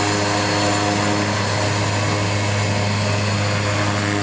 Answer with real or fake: real